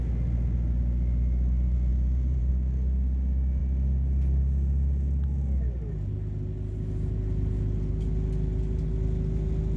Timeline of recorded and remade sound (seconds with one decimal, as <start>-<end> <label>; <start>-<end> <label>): 0.0-1.9 recorded; 1.9-2.5 remade; 2.5-9.8 recorded

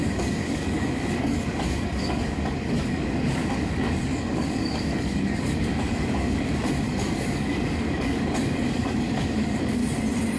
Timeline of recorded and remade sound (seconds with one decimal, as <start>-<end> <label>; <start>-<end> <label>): 0.0-9.8 remade; 9.8-10.4 recorded